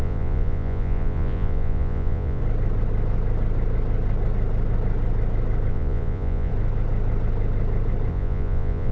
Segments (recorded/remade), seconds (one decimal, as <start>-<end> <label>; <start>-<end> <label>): 0.0-2.4 remade; 2.4-5.7 recorded; 5.7-6.5 remade; 6.5-8.1 recorded; 8.1-8.9 remade